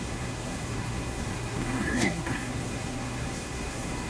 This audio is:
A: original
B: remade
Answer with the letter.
B